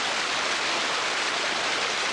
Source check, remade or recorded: recorded